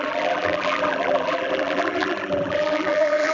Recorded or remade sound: remade